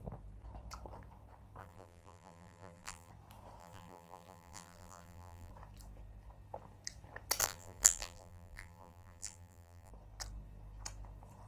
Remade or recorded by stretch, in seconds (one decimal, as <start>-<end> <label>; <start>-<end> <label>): 0.0-1.6 recorded; 1.6-3.1 remade; 3.1-3.6 recorded; 3.6-5.5 remade; 5.5-7.4 recorded; 7.4-9.9 remade; 9.9-11.5 recorded